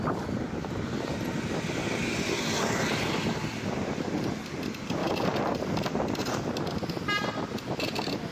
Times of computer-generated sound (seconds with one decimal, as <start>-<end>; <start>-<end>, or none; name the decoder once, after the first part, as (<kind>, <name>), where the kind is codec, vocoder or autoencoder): 5.0-6.5 (vocoder, BigVGAN v2)

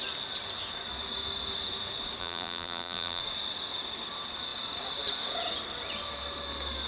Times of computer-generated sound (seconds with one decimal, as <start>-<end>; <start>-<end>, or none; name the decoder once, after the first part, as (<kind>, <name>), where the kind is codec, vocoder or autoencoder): 2.2-3.2 (vocoder, BigVGAN v2)

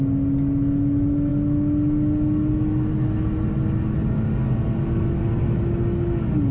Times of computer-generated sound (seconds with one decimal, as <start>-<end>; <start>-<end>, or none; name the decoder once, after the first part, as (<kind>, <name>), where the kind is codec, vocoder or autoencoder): none

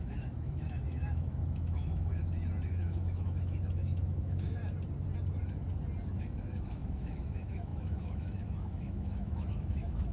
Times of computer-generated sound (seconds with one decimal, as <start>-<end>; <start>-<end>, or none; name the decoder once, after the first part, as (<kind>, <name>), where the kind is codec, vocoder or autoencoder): 0.0-2.1 (autoencoder, DAC-VAE); 2.7-4.6; 6.2-10.1

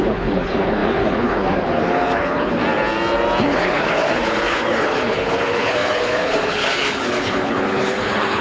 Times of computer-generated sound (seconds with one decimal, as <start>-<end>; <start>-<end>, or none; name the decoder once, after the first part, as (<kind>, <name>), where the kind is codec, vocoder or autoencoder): 0.0-2.6 (codec, HILCodec); 3.4-8.4

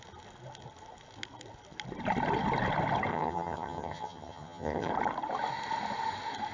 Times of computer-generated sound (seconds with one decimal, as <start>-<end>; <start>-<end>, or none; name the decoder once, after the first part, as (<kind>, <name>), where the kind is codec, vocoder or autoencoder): 3.1-4.9 (vocoder, HiFi-GAN)

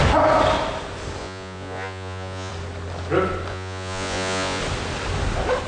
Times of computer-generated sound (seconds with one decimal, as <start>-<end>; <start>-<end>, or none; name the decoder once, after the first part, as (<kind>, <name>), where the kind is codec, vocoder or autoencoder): 1.2-2.5 (vocoder, Vocos); 3.5-4.6